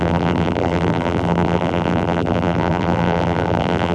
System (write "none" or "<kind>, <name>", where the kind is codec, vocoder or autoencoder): vocoder, BigVGAN v2